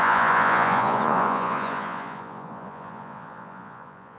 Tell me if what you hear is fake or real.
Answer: fake